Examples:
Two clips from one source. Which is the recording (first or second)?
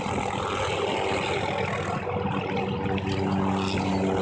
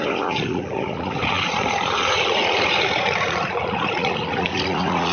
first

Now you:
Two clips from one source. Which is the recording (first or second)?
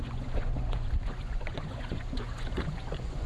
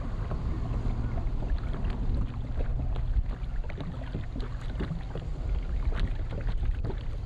second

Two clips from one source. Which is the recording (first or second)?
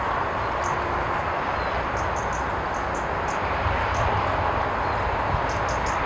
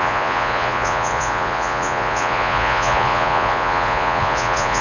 first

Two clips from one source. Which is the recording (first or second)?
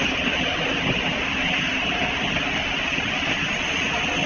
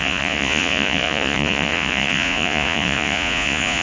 first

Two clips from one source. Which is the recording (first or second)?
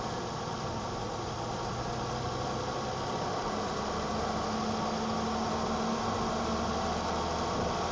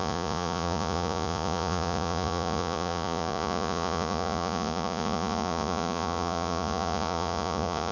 first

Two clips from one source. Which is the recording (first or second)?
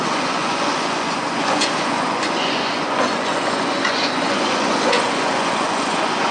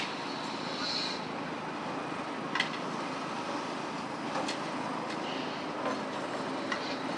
second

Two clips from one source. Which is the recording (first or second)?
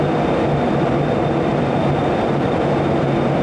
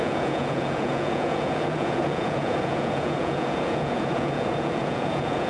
first